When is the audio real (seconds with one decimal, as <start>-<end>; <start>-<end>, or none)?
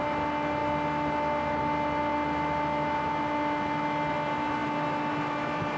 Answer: 0.0-5.8